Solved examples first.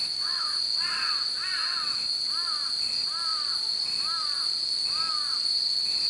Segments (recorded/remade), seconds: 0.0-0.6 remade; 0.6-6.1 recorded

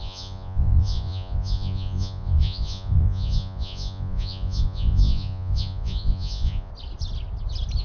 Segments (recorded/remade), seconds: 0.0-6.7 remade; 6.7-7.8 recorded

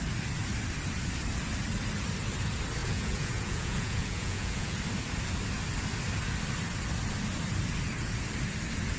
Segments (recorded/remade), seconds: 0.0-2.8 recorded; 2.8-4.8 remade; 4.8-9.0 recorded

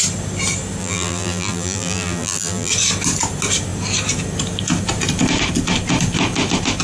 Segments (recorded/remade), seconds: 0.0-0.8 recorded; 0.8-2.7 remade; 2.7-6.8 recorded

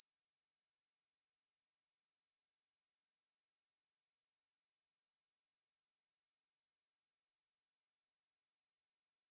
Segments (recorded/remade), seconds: 0.0-7.1 recorded; 7.1-7.8 remade; 7.8-9.3 recorded

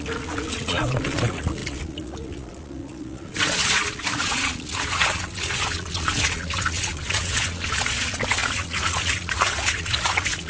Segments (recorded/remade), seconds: 0.0-10.5 remade

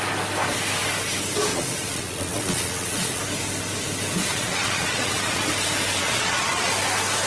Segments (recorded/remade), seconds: 0.0-1.5 recorded; 1.5-3.2 remade; 3.2-4.3 recorded; 4.3-5.5 remade; 5.5-6.0 recorded; 6.0-6.7 remade; 6.7-7.3 recorded